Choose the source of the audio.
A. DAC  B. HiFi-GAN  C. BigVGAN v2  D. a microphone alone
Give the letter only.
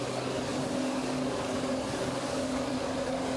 A